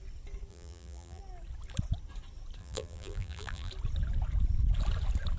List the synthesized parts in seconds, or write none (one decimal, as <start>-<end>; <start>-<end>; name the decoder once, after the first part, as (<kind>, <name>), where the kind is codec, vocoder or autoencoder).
0.5-1.2 (vocoder, BigVGAN v2); 2.6-3.7